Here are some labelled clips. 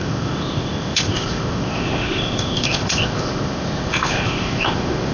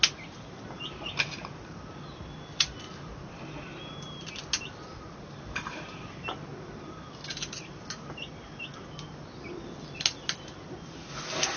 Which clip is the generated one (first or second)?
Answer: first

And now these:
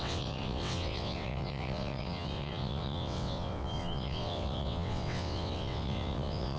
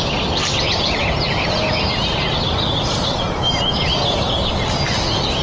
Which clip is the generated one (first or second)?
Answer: first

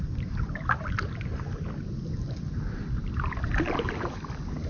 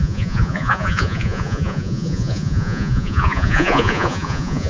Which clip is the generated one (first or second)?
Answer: second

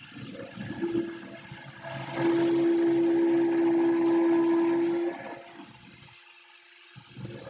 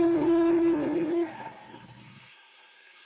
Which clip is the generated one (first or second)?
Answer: second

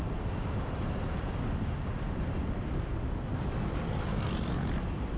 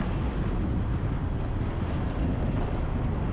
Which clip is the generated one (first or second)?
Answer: first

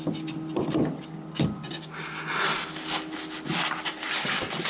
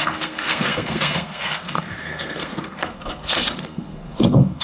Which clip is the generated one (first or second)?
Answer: second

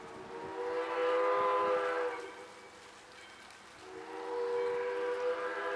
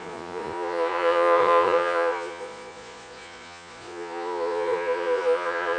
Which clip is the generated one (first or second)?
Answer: second